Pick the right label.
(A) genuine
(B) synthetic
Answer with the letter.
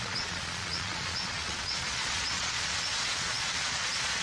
B